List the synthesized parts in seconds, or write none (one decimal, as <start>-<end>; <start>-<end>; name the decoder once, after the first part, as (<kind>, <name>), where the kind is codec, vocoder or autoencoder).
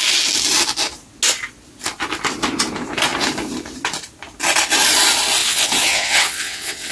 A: 5.4-6.9 (vocoder, WaveNeXt)